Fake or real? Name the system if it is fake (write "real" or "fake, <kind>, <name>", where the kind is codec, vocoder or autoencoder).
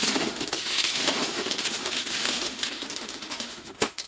fake, autoencoder, DAC-VAE